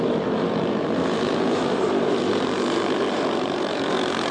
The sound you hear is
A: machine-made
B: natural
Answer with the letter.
A